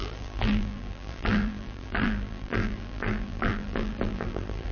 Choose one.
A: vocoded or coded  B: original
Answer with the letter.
A